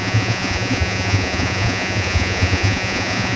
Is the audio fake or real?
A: fake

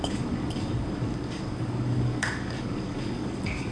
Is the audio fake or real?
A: fake